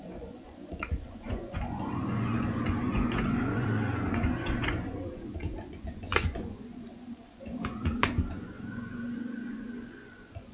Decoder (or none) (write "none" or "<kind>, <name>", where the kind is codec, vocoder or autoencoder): vocoder, Vocos